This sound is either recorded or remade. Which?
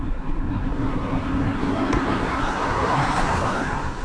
remade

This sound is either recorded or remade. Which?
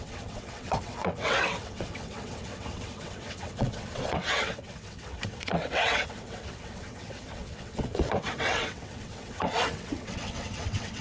remade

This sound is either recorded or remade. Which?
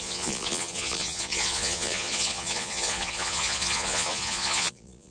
remade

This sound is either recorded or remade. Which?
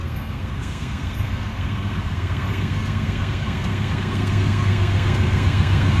remade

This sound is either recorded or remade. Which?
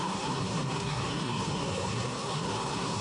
remade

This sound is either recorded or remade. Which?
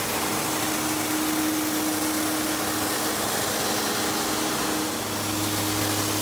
recorded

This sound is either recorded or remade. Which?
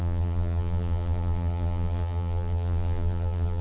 remade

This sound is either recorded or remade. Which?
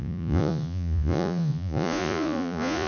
remade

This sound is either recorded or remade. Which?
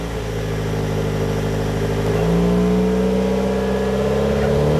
recorded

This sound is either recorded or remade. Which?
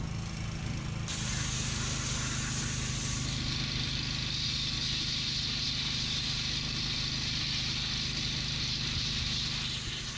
recorded